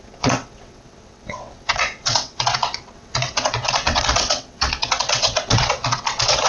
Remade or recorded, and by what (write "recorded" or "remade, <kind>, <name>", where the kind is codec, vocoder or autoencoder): remade, vocoder, WaveNeXt